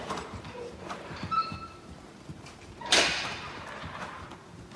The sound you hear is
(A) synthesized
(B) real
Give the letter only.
A